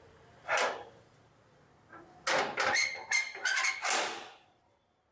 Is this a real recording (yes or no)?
yes